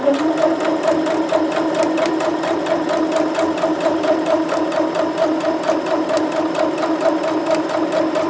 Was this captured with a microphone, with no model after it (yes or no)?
yes